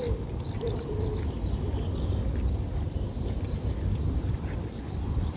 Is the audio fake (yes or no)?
no